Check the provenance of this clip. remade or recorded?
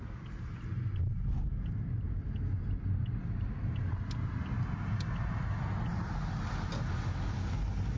recorded